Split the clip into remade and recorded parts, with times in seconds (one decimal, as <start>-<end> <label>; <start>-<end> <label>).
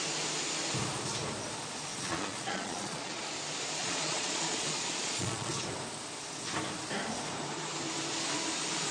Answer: 0.0-1.9 recorded; 1.9-3.2 remade; 3.2-3.8 recorded; 3.8-5.5 remade; 5.5-8.9 recorded